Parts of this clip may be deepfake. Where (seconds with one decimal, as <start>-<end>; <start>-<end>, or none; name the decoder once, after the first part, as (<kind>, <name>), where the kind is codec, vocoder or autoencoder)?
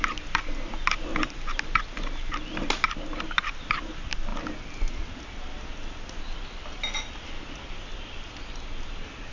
none